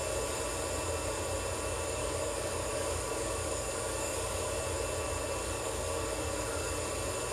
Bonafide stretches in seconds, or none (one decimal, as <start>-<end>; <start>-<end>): 0.0-2.0; 4.6-5.4; 6.7-7.3